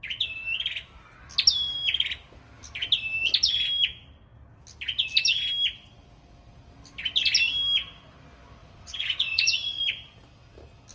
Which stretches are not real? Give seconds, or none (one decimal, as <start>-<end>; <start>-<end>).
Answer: 8.6-9.8